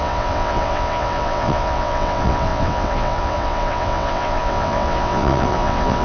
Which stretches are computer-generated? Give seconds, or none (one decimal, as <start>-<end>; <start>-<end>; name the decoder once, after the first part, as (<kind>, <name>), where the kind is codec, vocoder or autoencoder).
0.0-6.0 (vocoder, WaveNeXt)